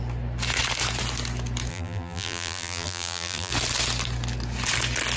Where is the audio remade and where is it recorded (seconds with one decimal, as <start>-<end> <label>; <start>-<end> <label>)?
0.0-1.7 recorded; 1.7-3.5 remade; 3.5-5.2 recorded

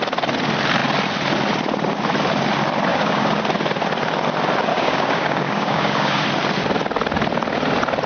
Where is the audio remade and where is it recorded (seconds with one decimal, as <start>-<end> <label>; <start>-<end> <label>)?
0.0-2.9 recorded; 2.9-3.4 remade; 3.4-4.7 recorded; 4.7-6.2 remade; 6.2-8.1 recorded

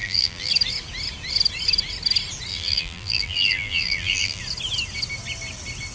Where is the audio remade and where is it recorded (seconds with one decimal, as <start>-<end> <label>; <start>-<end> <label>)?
0.0-0.5 remade; 0.5-2.5 recorded; 2.5-4.4 remade; 4.4-5.9 recorded

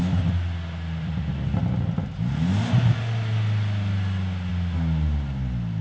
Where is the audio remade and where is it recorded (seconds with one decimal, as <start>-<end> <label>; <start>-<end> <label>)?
0.0-5.8 recorded

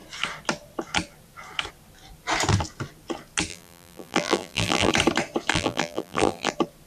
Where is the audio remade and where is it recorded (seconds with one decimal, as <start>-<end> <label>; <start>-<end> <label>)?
0.0-3.5 recorded; 3.5-4.9 remade; 4.9-5.5 recorded; 5.5-6.5 remade; 6.5-6.9 recorded

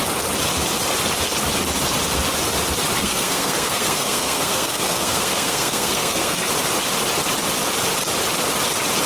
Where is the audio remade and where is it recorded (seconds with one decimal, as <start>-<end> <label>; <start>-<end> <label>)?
0.0-3.0 recorded; 3.0-6.5 remade; 6.5-9.1 recorded

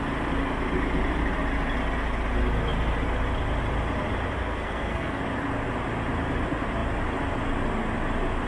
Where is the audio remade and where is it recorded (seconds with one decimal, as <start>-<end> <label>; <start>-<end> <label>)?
0.0-4.4 recorded; 4.4-5.2 remade; 5.2-8.5 recorded

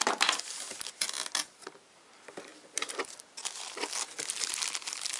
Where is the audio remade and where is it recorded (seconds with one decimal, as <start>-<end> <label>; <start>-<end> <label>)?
0.0-5.2 recorded